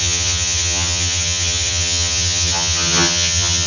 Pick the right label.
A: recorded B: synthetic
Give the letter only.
B